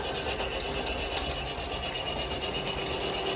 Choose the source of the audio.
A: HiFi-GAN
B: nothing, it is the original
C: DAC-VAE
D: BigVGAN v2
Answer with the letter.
B